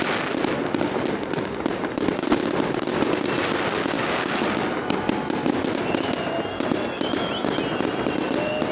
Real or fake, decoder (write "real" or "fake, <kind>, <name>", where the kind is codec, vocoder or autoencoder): real